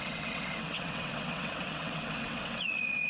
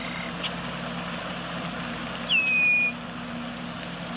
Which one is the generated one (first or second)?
first